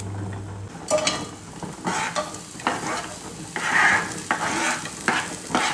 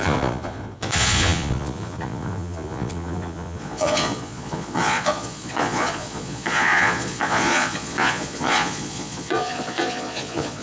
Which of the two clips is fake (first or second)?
second